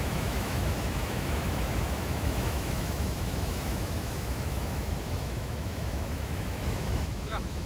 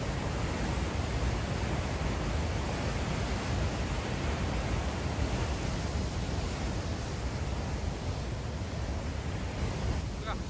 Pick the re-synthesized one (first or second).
first